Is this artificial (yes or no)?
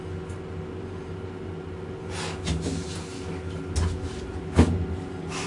no